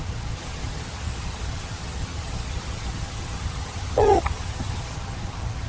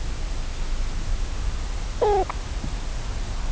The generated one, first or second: first